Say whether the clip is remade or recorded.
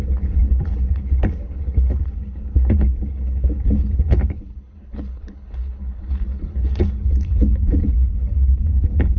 remade